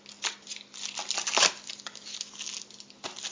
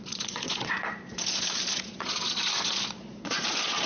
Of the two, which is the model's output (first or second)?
second